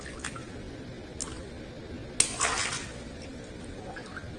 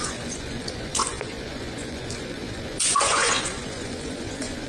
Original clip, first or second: first